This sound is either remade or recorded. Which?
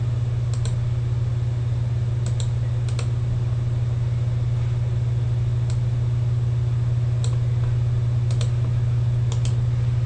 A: recorded